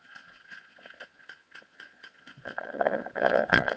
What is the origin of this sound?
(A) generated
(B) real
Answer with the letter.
A